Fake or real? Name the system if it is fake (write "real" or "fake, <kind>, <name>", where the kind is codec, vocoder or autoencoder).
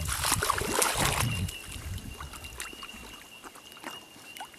real